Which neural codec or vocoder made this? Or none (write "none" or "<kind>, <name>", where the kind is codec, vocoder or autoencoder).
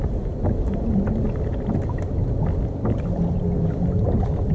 none